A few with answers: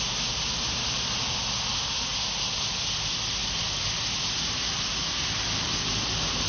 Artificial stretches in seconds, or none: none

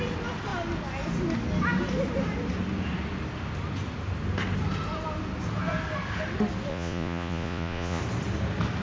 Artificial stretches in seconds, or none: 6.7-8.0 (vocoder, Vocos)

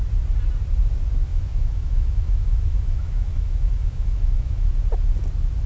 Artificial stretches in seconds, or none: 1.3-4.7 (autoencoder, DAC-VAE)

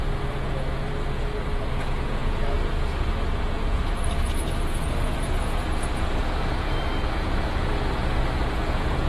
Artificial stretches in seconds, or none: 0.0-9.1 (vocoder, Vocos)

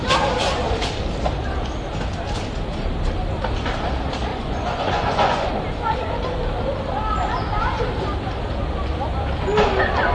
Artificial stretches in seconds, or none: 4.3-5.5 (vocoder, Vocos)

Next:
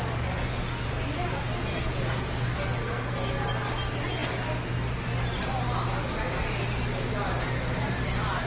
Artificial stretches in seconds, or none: 2.8-3.3 (codec, SNAC)